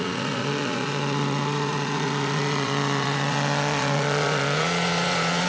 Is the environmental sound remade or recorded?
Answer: remade